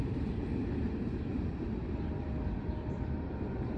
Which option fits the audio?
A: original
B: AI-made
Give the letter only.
A